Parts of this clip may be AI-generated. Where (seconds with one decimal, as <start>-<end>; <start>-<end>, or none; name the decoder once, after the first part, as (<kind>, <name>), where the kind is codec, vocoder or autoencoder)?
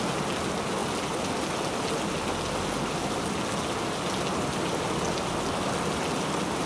none